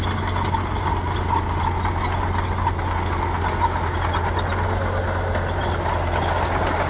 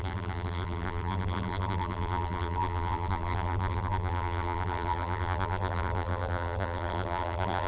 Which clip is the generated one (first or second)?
second